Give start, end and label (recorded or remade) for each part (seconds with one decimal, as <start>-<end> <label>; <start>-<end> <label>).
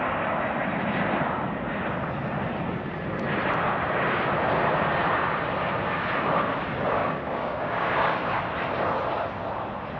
0.0-7.0 recorded; 7.0-8.4 remade; 8.4-10.0 recorded